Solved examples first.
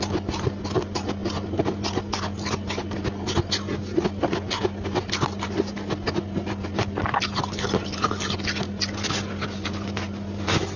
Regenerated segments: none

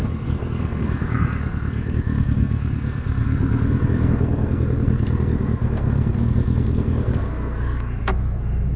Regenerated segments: 0.0-8.8

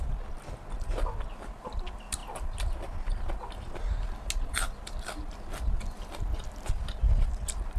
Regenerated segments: none

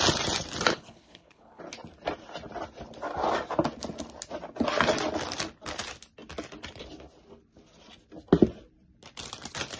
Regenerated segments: 0.7-1.6